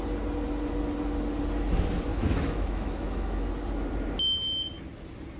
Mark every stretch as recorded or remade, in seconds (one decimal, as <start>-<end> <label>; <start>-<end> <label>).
0.0-2.1 recorded; 2.1-3.5 remade; 3.5-5.4 recorded